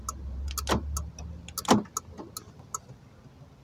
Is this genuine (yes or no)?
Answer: yes